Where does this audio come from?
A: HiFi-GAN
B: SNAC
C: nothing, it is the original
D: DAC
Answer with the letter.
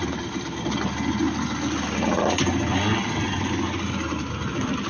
C